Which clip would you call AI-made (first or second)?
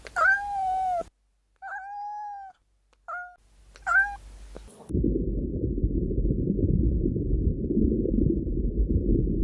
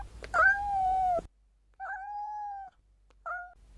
second